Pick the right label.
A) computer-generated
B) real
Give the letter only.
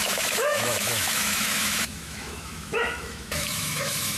A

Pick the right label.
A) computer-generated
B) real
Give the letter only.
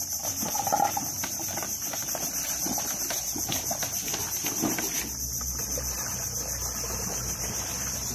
B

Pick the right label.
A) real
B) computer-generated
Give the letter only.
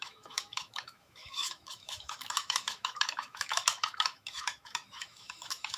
B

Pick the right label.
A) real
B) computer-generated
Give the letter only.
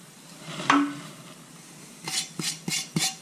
A